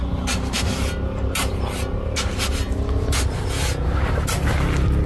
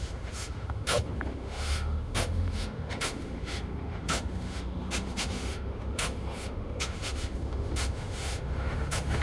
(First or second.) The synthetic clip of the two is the second